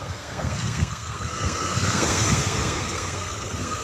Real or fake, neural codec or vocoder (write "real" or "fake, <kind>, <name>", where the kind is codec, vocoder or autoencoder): fake, codec, SNAC